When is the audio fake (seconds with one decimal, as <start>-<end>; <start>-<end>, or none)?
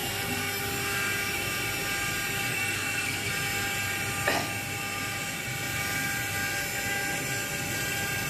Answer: 0.0-0.6; 2.5-3.3